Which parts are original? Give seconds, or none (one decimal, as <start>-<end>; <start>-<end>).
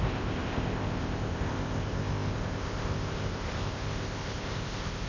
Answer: none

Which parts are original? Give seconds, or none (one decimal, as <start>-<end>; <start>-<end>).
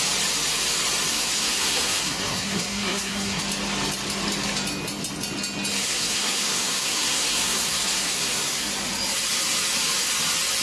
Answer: 0.0-1.1; 3.4-5.8; 8.7-10.6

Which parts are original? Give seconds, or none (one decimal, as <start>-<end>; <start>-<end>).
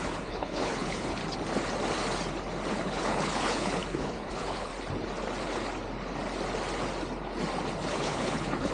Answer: 1.2-2.7; 4.7-7.9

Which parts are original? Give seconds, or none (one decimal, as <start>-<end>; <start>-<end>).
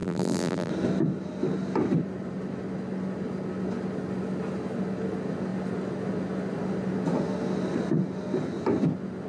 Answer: 0.7-9.3